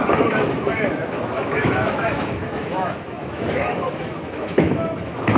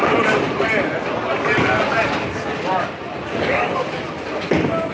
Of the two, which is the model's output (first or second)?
first